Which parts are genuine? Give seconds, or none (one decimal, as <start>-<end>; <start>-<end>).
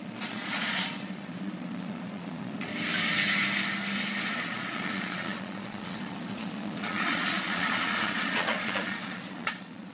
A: 2.7-4.4